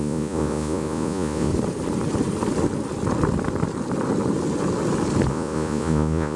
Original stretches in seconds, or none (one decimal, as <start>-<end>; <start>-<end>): 1.5-5.3